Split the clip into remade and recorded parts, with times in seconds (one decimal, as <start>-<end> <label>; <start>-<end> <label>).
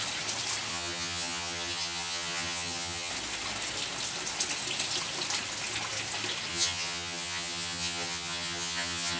0.0-0.7 recorded; 0.7-3.1 remade; 3.1-6.5 recorded; 6.5-9.2 remade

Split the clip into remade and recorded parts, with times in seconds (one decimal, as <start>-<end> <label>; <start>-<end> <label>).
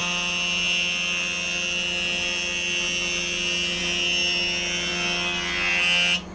0.0-6.3 recorded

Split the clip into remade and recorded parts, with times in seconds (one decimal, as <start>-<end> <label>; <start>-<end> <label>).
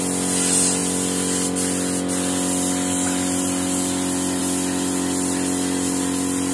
0.0-6.5 recorded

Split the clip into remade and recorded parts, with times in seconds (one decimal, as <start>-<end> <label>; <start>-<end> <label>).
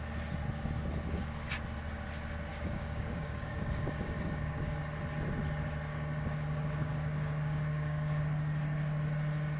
0.0-2.5 recorded; 2.5-4.8 remade; 4.8-5.9 recorded; 5.9-8.2 remade; 8.2-9.6 recorded